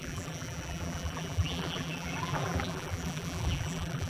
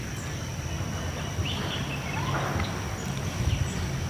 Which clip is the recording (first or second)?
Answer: second